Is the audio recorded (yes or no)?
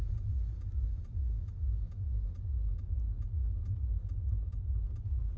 yes